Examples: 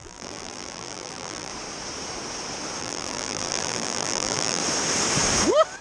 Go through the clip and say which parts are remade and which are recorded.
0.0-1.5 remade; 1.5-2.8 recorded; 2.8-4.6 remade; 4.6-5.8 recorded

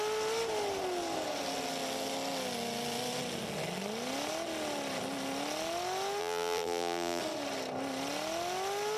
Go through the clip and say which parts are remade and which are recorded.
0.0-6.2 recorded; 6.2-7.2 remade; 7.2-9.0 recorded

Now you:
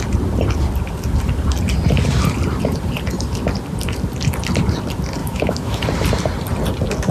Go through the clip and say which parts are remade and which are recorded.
0.0-5.2 recorded; 5.2-5.8 remade; 5.8-7.1 recorded

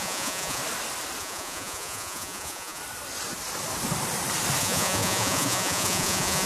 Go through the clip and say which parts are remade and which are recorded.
0.0-0.6 remade; 0.6-1.2 recorded; 1.2-2.8 remade; 2.8-4.6 recorded; 4.6-6.5 remade

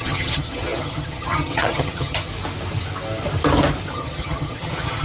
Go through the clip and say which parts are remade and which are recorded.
0.0-2.3 remade; 2.3-3.9 recorded; 3.9-5.0 remade